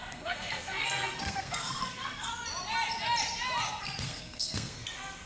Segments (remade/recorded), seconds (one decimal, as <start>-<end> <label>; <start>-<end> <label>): 0.0-2.3 remade; 2.3-3.8 recorded; 3.8-5.3 remade